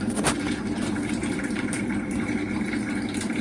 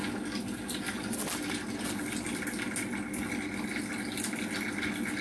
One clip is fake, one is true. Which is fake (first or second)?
first